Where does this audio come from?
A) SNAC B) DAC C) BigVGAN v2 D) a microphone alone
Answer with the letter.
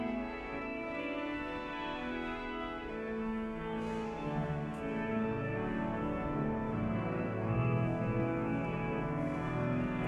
A